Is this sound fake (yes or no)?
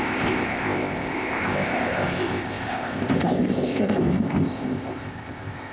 yes